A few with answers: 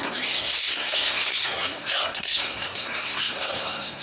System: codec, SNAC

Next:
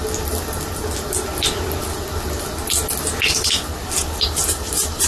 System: none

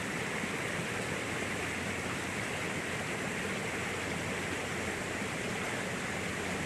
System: none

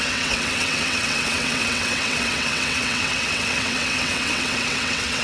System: vocoder, WaveNeXt